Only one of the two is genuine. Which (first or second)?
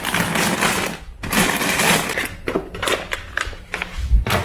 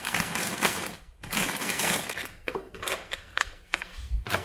first